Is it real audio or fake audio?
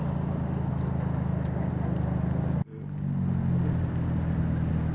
real